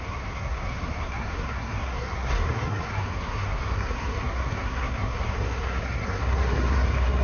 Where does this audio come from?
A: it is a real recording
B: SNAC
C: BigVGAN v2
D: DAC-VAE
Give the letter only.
B